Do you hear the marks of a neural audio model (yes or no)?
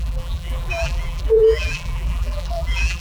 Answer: yes